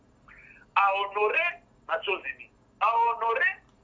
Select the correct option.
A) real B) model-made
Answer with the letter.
A